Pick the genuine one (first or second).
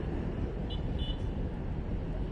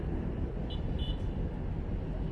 second